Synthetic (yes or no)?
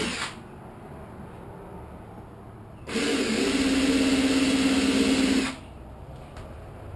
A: no